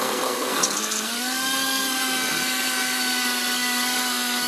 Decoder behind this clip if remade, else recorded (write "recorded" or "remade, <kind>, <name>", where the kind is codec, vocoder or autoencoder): remade, codec, SNAC